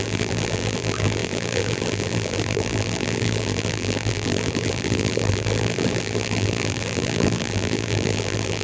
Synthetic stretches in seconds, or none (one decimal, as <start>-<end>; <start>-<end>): 0.0-8.6